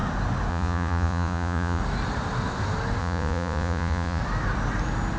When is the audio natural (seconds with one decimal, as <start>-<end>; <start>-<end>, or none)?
0.0-0.5; 1.8-3.0; 4.2-5.2